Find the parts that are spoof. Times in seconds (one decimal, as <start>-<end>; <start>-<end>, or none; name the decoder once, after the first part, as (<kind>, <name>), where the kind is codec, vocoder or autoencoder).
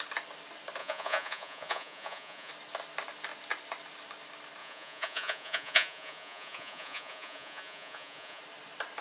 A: 0.8-2.5 (vocoder, Vocos); 4.6-8.4